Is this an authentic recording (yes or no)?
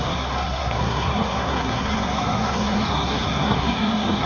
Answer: no